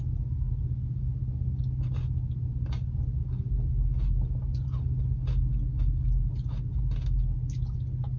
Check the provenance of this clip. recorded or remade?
recorded